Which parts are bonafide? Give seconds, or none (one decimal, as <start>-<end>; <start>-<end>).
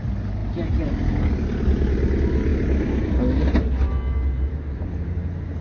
0.0-5.6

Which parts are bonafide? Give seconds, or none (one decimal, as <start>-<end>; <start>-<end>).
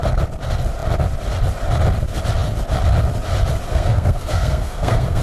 0.0-3.7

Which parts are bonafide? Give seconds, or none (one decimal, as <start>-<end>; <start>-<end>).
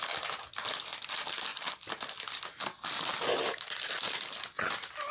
0.0-5.1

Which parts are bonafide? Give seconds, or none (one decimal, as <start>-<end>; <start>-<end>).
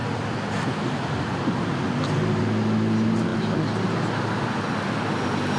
0.0-5.6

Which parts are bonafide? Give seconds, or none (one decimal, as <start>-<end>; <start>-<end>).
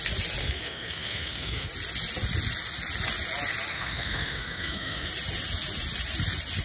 0.0-0.4; 1.7-3.7; 5.1-6.6